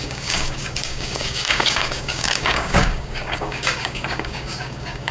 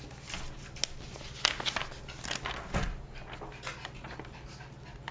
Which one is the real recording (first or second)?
second